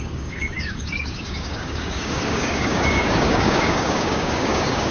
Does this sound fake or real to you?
fake